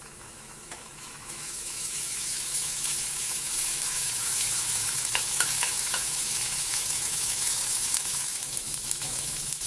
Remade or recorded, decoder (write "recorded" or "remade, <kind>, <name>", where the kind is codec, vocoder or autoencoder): remade, autoencoder, DAC-VAE